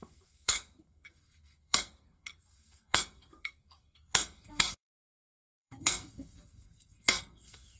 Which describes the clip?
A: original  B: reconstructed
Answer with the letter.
B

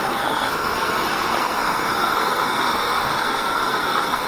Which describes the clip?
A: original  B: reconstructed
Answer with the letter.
B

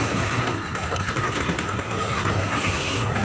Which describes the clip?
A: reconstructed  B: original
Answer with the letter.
A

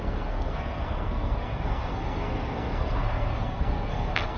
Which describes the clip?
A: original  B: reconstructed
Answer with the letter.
B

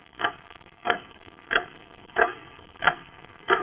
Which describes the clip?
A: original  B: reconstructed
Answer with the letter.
B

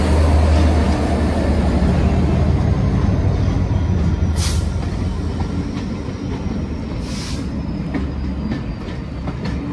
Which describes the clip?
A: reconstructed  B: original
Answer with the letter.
B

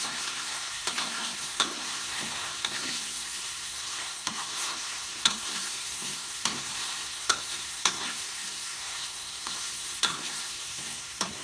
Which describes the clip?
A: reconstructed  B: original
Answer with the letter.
A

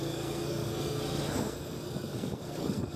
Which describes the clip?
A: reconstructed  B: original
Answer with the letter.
A